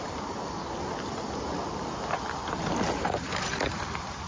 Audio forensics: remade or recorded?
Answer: recorded